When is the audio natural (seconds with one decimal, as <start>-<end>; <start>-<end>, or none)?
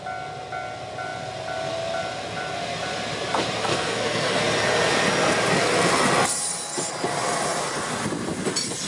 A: 0.0-3.7; 4.4-8.9